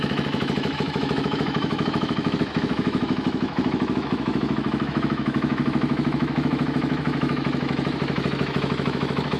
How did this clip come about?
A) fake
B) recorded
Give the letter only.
A